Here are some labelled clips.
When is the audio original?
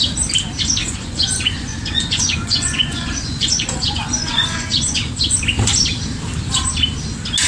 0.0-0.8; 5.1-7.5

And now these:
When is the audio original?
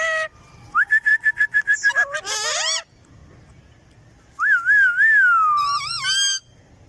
1.1-1.9; 3.2-6.4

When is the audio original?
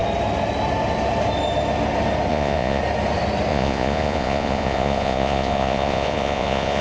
0.0-2.3; 2.8-3.5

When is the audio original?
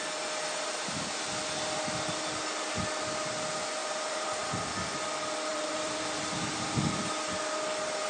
0.0-3.8; 4.3-5.5; 6.2-8.1